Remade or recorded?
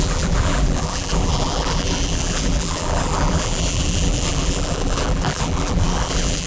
remade